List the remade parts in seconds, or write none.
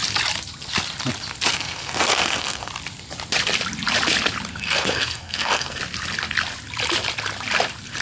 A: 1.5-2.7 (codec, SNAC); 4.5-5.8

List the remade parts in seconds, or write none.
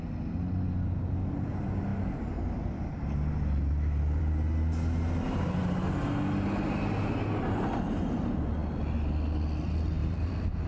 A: 10.0-10.7 (vocoder, BigVGAN v2)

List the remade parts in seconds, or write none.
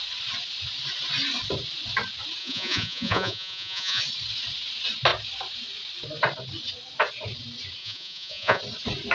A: 2.4-4.0 (vocoder, Vocos); 7.8-8.6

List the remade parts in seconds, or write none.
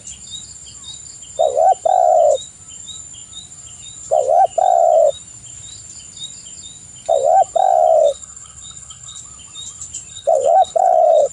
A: 8.0-9.2 (codec, HILCodec); 10.1-11.3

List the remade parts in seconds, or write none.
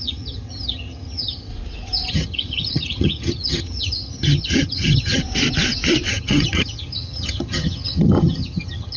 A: 0.0-1.5 (vocoder, HiFi-GAN); 2.1-5.2; 6.1-9.0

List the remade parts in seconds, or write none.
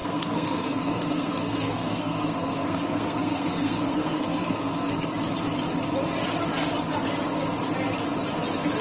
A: 0.0-5.1 (codec, SNAC)